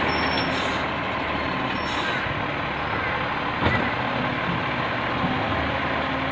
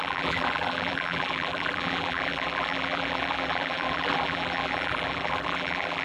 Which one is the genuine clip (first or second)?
first